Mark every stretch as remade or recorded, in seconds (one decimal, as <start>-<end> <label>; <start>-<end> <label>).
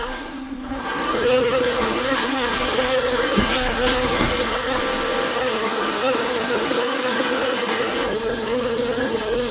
0.0-4.8 remade; 4.8-5.3 recorded; 5.3-9.5 remade